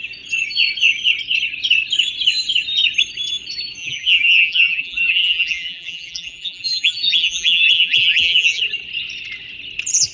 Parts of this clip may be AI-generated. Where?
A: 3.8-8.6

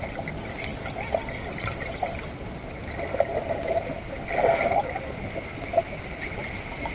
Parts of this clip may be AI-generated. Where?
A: none

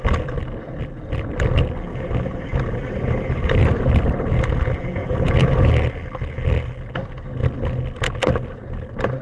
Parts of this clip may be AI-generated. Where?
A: 1.9-4.3; 5.0-5.7

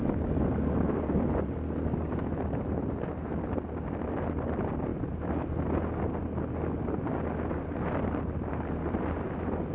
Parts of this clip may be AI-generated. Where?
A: 0.0-4.9; 6.9-9.7